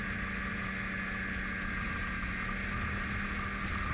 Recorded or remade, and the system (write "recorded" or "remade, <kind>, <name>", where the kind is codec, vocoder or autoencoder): recorded